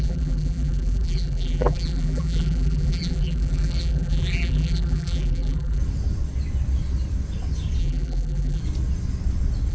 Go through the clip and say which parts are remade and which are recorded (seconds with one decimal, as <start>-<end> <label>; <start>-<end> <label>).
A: 0.0-5.8 remade; 5.8-7.8 recorded; 7.8-8.6 remade; 8.6-9.7 recorded